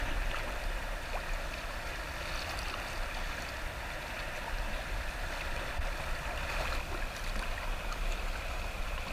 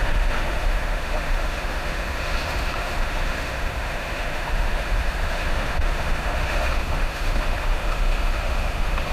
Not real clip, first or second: second